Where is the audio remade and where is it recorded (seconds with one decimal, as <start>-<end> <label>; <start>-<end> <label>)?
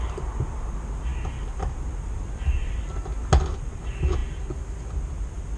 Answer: 0.0-5.6 recorded